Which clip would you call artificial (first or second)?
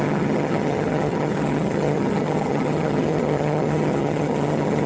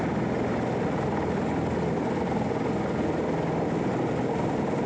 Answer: first